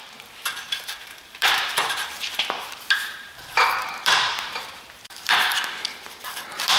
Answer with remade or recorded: remade